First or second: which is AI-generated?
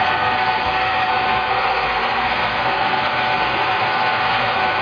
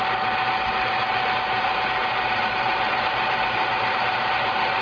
first